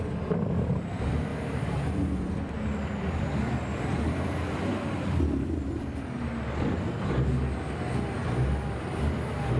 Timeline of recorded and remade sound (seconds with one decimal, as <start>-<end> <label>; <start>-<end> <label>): 0.0-1.3 recorded; 1.3-1.9 remade; 1.9-3.9 recorded; 3.9-4.4 remade; 4.4-9.6 recorded